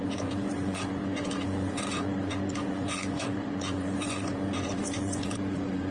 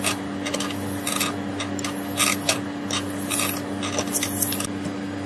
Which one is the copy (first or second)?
first